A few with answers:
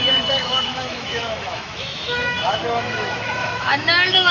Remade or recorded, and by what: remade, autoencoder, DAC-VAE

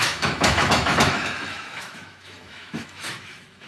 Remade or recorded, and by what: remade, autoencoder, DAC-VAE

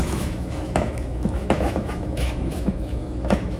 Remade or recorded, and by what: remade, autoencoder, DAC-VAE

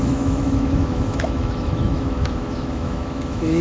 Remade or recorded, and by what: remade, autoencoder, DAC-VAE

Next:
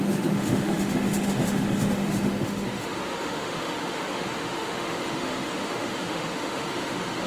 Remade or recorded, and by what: remade, autoencoder, DAC-VAE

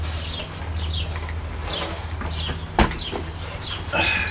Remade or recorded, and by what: recorded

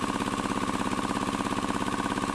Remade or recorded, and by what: recorded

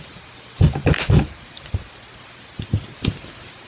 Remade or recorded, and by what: recorded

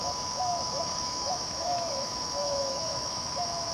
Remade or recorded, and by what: remade, autoencoder, DAC-VAE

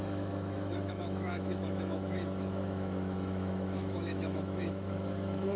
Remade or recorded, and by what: remade, autoencoder, DAC-VAE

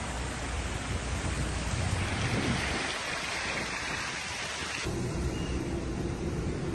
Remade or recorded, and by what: recorded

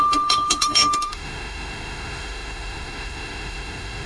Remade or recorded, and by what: remade, autoencoder, DAC-VAE